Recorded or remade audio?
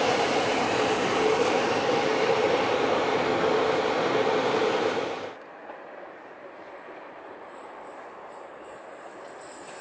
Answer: remade